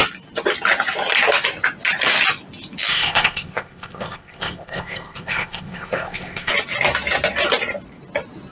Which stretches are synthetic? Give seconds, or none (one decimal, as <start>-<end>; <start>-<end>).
2.9-6.5